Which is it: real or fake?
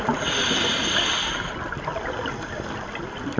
real